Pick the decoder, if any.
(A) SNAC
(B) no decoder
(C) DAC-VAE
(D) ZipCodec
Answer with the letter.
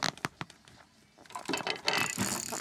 B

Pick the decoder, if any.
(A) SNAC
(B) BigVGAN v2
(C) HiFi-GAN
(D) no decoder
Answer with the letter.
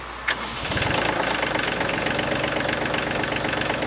D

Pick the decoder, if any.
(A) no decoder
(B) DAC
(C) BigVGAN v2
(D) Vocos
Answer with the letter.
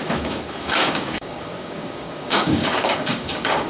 B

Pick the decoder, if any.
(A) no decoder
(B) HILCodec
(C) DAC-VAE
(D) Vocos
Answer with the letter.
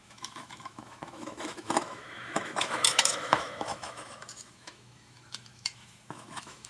C